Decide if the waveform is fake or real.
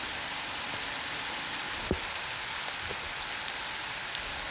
real